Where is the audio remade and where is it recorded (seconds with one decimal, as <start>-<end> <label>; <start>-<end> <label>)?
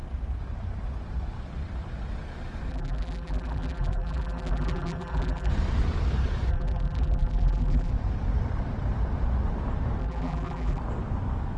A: 0.0-2.7 recorded; 2.7-5.5 remade; 5.5-6.5 recorded; 6.5-7.9 remade; 7.9-10.0 recorded; 10.0-10.8 remade; 10.8-11.6 recorded